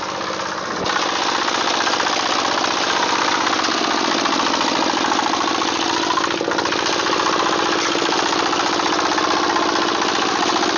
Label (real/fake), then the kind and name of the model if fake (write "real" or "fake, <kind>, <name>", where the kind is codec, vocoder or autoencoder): real